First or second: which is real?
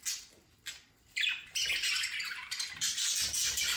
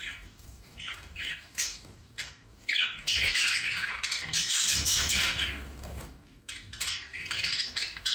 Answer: first